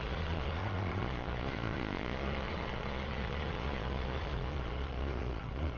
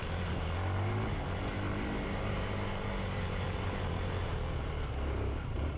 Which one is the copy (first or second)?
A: first